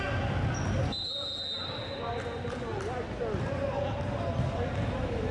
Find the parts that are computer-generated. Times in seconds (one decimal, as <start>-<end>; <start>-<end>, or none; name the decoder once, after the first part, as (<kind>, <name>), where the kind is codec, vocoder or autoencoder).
none